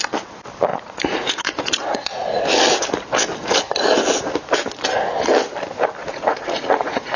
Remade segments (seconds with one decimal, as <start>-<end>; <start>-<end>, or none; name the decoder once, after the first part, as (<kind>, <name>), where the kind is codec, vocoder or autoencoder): 0.7-2.4 (vocoder, Vocos); 6.0-7.2